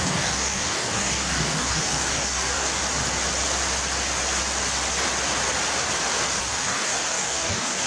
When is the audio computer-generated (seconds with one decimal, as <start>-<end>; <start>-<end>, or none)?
0.0-2.8; 6.4-7.9